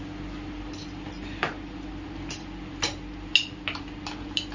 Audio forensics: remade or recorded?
recorded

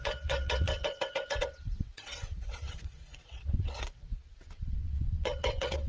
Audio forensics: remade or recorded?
remade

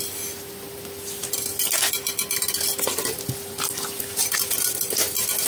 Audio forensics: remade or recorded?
recorded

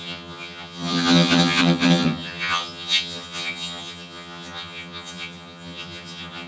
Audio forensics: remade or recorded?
remade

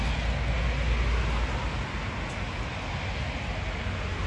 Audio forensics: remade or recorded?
recorded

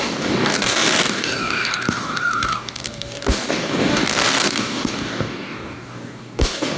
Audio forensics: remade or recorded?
remade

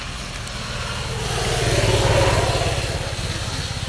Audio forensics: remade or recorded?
recorded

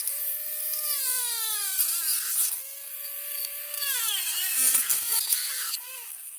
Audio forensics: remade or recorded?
remade